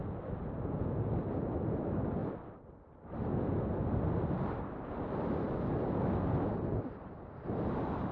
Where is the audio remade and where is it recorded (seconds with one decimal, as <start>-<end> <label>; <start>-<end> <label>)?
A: 0.0-8.1 recorded